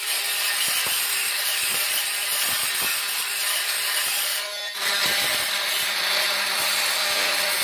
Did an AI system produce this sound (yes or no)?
no